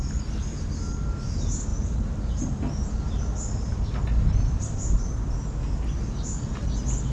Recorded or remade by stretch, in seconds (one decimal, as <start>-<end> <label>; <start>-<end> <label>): 0.0-7.1 recorded